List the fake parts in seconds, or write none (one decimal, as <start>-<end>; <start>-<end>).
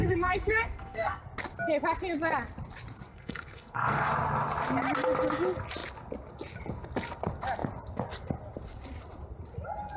0.0-1.2; 3.1-4.1